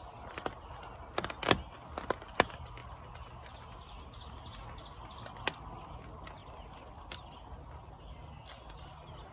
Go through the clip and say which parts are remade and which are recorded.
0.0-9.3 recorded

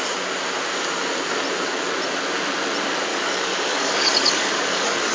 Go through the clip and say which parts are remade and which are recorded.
0.0-3.1 recorded; 3.1-5.1 remade

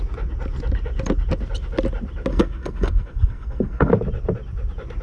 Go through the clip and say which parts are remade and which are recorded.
0.0-2.3 recorded; 2.3-3.9 remade; 3.9-5.0 recorded

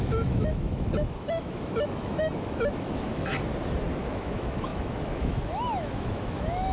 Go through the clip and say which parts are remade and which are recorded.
0.0-3.3 remade; 3.3-4.0 recorded; 4.0-6.7 remade

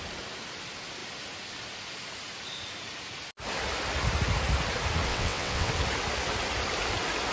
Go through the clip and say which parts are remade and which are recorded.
0.0-5.1 recorded; 5.1-5.7 remade; 5.7-7.3 recorded